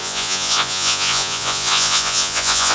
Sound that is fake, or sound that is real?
fake